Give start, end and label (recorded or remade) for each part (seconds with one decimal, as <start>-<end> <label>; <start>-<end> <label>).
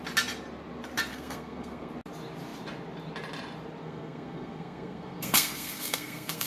0.0-1.1 recorded; 1.1-1.9 remade; 1.9-3.8 recorded; 3.8-6.5 remade